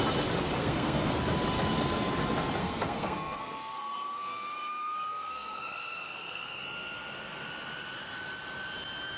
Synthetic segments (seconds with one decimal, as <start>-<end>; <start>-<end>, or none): 0.6-1.1; 2.6-6.6